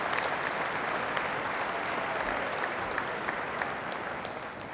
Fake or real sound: real